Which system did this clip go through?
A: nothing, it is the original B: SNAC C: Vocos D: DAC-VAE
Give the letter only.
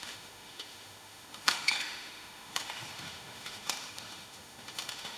D